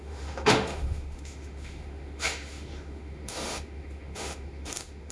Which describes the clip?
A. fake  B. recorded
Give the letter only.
A